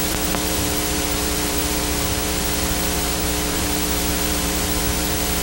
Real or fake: fake